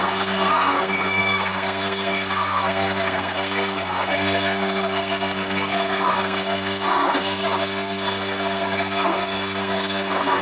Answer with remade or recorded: remade